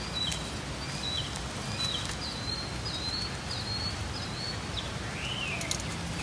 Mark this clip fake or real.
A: real